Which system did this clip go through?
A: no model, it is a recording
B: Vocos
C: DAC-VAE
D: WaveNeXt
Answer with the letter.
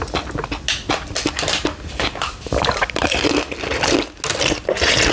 A